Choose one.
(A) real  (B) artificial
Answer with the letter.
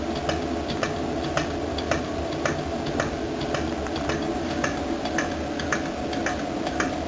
A